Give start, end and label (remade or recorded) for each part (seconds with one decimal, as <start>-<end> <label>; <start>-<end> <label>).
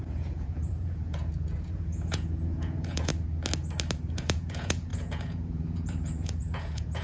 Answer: 0.0-3.1 remade; 3.1-4.1 recorded; 4.1-7.0 remade